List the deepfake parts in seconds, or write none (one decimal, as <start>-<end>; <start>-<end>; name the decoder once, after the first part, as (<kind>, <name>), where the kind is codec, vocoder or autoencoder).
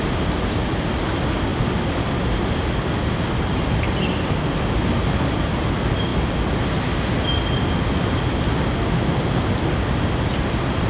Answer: 1.5-2.5 (vocoder, BigVGAN v2)